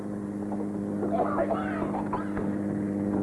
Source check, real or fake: real